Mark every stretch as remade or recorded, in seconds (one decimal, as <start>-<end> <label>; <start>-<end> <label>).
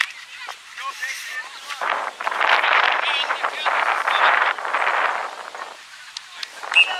0.0-0.5 recorded; 0.5-4.7 remade; 4.7-7.0 recorded